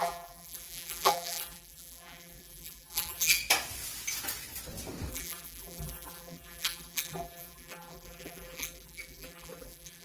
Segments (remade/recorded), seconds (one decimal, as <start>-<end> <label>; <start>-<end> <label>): 0.0-3.4 remade; 3.4-5.1 recorded; 5.1-10.0 remade